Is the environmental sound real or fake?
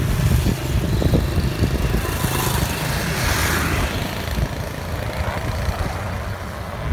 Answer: real